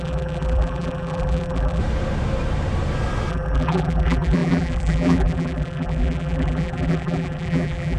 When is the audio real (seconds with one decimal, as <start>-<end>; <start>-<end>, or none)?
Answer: 1.8-3.3